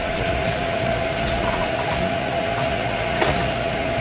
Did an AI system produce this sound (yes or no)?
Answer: yes